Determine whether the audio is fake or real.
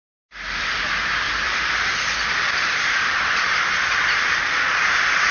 fake